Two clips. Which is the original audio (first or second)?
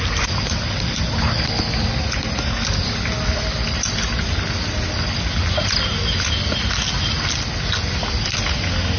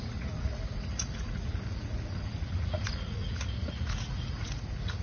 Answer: first